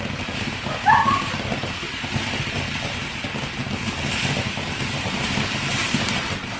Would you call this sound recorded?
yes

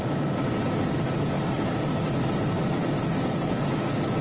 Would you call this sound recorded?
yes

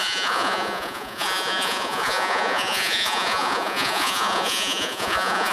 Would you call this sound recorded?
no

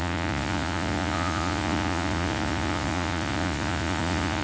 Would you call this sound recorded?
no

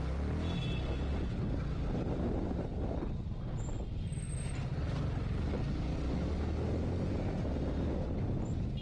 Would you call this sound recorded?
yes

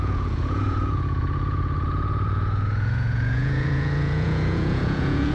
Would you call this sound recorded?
no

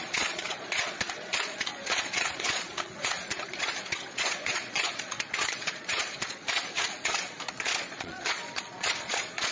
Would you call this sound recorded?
no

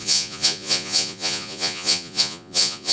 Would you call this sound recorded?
no